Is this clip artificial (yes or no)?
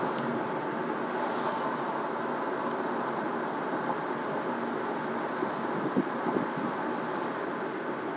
no